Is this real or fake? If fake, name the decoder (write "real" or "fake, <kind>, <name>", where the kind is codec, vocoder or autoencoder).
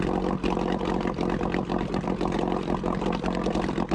real